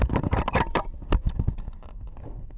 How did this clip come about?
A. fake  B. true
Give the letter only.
A